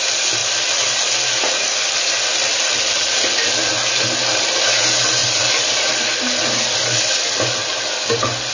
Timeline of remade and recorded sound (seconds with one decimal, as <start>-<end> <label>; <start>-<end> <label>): 0.0-8.5 recorded